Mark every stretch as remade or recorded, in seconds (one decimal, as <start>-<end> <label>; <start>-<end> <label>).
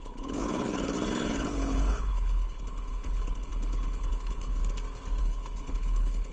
0.0-4.6 remade; 4.6-5.2 recorded; 5.2-6.3 remade